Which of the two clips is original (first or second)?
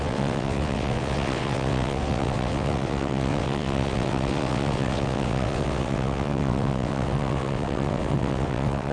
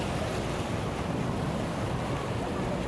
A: second